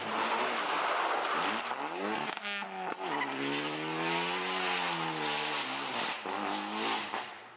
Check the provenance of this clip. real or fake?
real